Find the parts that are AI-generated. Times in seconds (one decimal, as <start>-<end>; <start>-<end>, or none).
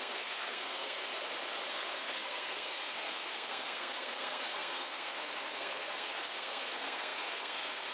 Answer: 0.0-1.1; 1.7-7.9